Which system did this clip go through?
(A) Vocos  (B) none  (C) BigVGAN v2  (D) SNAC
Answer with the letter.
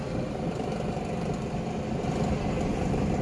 B